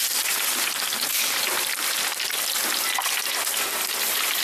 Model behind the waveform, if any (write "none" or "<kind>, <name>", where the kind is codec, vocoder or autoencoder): none